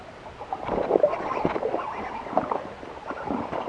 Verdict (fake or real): real